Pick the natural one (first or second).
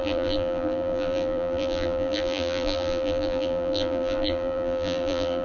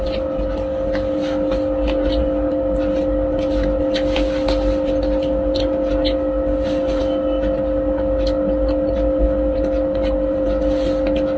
second